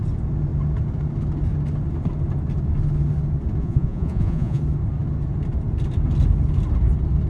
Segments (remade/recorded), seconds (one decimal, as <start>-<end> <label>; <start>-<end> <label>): 0.0-3.6 recorded; 3.6-4.6 remade; 4.6-7.3 recorded